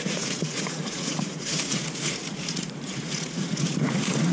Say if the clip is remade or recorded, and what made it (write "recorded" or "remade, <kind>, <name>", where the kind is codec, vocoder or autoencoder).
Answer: remade, vocoder, Vocos